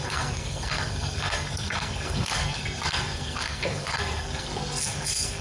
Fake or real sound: fake